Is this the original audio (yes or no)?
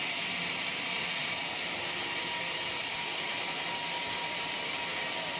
yes